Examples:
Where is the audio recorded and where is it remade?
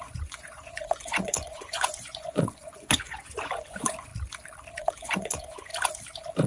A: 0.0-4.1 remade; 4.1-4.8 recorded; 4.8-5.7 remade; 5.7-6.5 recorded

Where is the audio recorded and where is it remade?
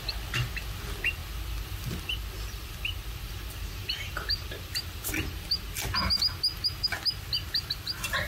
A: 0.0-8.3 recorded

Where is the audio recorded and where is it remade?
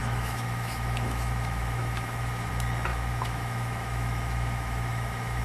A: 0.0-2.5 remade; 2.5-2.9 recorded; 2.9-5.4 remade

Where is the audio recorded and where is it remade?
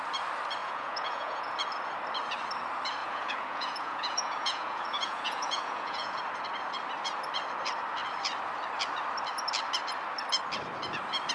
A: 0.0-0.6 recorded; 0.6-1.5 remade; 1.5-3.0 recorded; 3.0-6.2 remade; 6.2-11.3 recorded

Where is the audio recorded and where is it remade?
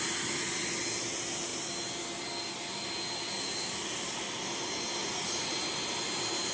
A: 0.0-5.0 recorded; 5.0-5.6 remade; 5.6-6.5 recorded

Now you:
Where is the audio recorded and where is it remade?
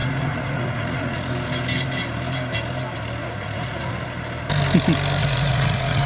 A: 0.0-1.3 remade; 1.3-3.2 recorded; 3.2-3.9 remade; 3.9-5.2 recorded; 5.2-6.1 remade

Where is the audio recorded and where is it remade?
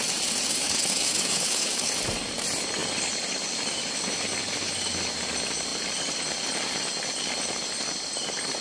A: 0.0-0.5 recorded; 0.5-1.9 remade; 1.9-8.6 recorded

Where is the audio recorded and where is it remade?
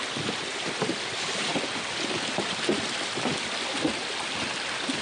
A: 0.0-5.0 remade